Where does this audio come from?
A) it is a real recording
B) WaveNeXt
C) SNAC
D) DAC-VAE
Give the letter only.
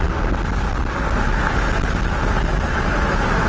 A